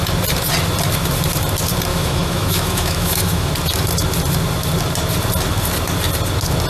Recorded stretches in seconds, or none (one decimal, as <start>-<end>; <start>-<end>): 0.0-1.9; 3.5-6.7